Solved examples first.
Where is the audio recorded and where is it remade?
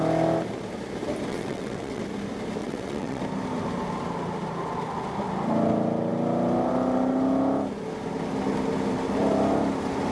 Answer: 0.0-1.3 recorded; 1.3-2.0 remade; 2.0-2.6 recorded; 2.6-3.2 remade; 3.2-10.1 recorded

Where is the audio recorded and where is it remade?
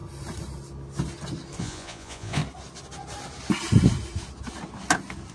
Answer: 0.0-1.6 recorded; 1.6-2.4 remade; 2.4-5.3 recorded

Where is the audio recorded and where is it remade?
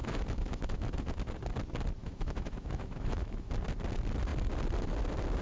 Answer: 0.0-1.2 remade; 1.2-2.0 recorded; 2.0-3.5 remade; 3.5-5.4 recorded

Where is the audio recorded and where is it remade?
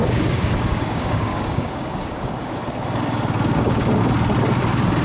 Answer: 0.0-2.6 remade; 2.6-3.6 recorded; 3.6-4.0 remade; 4.0-4.6 recorded; 4.6-5.0 remade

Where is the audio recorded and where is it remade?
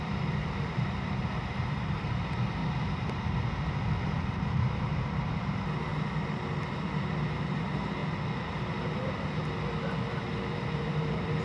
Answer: 0.0-2.6 remade; 2.6-4.2 recorded; 4.2-5.9 remade; 5.9-7.2 recorded; 7.2-8.0 remade; 8.0-10.5 recorded; 10.5-11.4 remade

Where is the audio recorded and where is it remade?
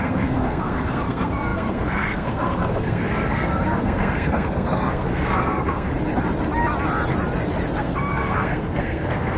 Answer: 0.0-5.9 remade; 5.9-7.8 recorded; 7.8-9.4 remade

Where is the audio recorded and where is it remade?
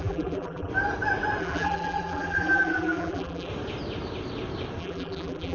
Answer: 0.0-0.7 remade; 0.7-1.4 recorded; 1.4-3.5 remade; 3.5-4.8 recorded; 4.8-5.5 remade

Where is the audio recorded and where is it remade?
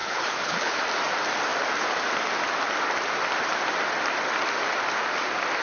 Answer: 0.0-0.8 remade; 0.8-5.6 recorded